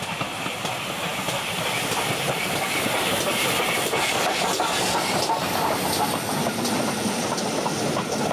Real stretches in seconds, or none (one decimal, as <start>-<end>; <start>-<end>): 0.0-8.3